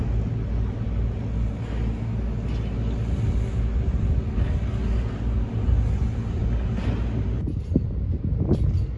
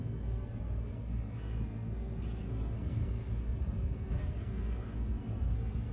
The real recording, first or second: first